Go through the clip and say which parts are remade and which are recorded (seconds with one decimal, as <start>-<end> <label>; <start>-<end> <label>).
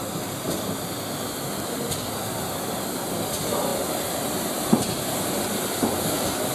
0.0-6.5 recorded